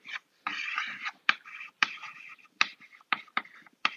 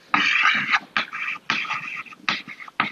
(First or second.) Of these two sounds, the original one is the second